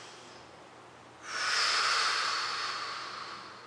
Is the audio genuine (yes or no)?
yes